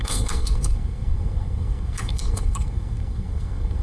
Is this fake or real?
fake